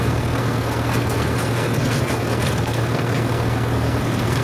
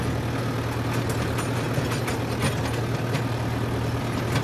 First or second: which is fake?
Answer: first